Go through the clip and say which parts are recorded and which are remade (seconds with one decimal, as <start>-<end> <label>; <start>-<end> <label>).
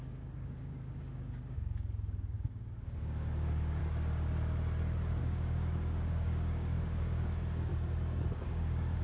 0.0-3.8 remade; 3.8-5.2 recorded; 5.2-7.7 remade; 7.7-8.4 recorded; 8.4-9.0 remade